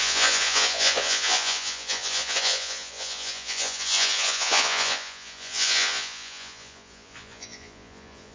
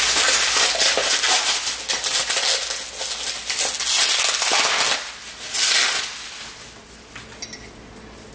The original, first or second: second